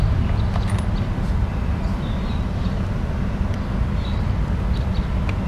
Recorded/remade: recorded